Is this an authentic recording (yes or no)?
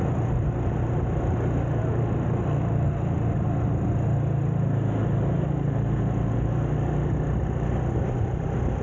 yes